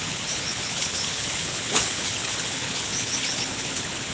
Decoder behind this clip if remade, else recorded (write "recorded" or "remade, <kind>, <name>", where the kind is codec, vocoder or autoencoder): remade, codec, HILCodec